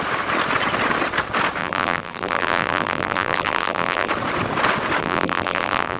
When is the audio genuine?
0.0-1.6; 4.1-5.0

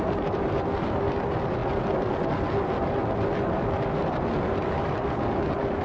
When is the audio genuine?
0.0-5.8

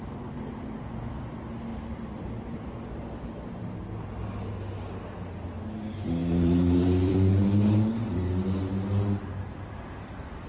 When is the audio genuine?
0.0-1.7; 3.8-6.2; 7.3-10.5